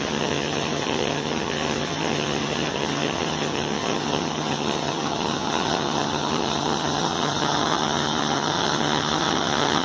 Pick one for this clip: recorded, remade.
remade